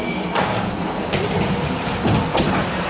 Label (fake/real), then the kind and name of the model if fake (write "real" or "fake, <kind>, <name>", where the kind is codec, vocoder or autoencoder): real